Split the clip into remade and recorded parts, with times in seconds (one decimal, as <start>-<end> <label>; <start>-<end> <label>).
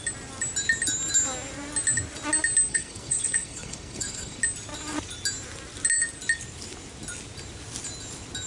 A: 0.0-2.7 recorded; 2.7-4.4 remade; 4.4-8.5 recorded